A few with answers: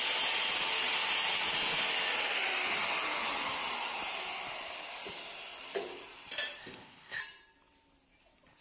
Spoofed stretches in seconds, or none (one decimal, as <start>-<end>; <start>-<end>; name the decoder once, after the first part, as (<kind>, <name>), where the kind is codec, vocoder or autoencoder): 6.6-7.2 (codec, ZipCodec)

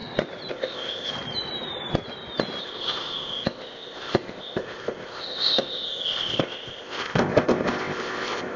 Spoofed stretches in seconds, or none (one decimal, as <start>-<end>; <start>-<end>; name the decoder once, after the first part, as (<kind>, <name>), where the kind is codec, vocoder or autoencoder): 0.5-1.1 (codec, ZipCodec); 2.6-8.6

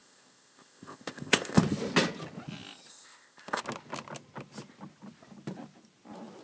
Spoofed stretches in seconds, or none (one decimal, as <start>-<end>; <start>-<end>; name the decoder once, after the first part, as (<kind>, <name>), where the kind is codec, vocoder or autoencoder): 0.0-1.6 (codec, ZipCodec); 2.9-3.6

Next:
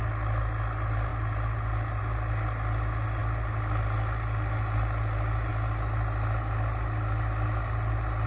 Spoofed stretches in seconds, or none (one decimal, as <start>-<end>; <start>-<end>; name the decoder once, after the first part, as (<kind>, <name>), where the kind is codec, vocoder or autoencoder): none

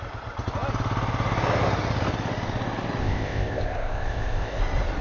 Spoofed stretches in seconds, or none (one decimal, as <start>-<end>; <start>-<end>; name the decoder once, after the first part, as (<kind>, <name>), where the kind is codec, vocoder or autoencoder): 3.0-4.6 (codec, ZipCodec)

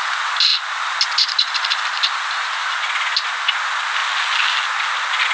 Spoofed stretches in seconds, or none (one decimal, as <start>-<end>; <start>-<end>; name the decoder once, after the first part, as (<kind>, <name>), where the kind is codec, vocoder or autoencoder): none